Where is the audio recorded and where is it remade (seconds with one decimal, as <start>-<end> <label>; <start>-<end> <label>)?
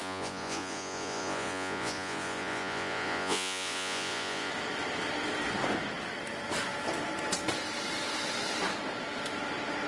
0.0-4.5 remade; 4.5-9.9 recorded